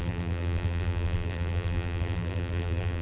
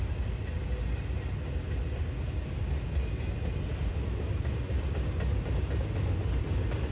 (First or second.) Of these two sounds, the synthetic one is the first